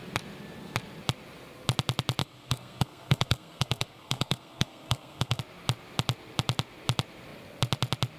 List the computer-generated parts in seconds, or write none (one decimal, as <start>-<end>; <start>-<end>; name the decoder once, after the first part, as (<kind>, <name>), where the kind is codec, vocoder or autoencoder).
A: 2.2-5.4 (codec, SNAC)